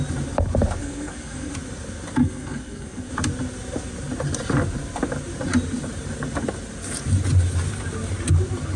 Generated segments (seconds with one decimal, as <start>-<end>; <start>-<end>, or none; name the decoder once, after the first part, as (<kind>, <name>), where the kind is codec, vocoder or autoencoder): 0.8-1.5 (codec, SNAC); 2.2-3.1